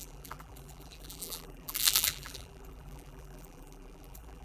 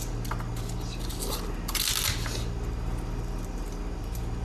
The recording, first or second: second